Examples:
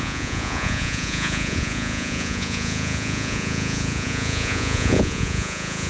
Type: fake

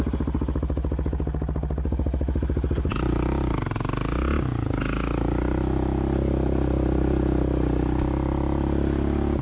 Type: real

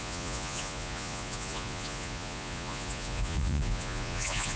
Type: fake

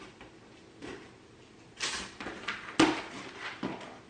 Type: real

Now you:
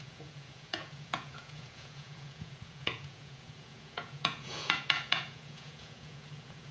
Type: fake